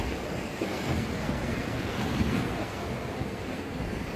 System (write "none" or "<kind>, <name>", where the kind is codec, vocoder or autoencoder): codec, SNAC